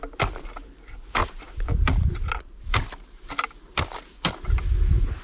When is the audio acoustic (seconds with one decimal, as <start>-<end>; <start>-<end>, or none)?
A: 0.0-1.2; 4.3-5.2